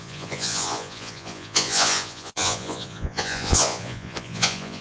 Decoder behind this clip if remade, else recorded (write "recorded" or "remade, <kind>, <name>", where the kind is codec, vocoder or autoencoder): remade, vocoder, Vocos